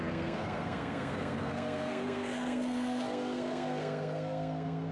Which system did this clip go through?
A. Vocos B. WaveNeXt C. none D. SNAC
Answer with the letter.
D